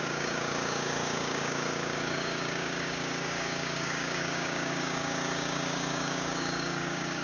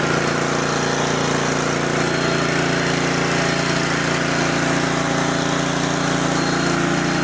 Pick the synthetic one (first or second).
first